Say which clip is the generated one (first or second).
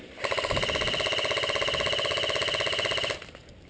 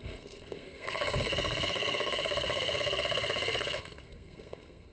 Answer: second